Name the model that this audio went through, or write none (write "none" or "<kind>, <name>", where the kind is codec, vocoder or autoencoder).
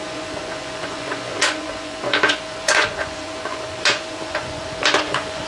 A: vocoder, Vocos